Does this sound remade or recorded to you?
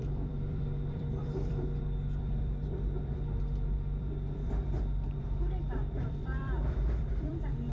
remade